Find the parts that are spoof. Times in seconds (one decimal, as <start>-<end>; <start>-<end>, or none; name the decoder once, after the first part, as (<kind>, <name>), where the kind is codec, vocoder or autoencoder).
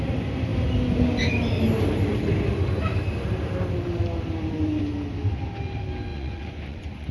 6.1-7.1 (vocoder, Vocos)